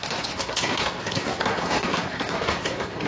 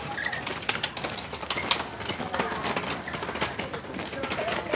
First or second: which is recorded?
second